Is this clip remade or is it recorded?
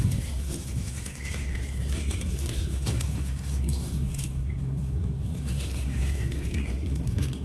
remade